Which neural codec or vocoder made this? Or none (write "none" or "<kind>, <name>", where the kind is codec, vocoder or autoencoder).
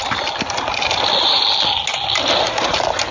none